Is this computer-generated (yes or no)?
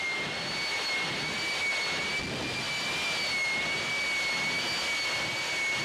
no